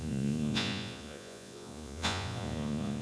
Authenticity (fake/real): fake